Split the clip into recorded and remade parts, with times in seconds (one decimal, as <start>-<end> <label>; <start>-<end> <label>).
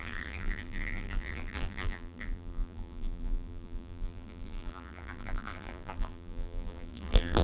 0.0-7.4 remade